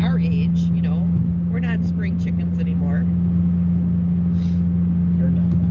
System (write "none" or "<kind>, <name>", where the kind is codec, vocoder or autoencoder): none